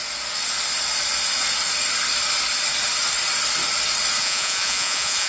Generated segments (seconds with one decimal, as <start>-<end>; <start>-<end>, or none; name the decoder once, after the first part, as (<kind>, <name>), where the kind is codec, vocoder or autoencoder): 4.2-5.3 (vocoder, Vocos)